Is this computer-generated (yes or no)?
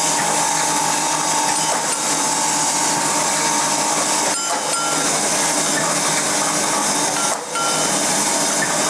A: no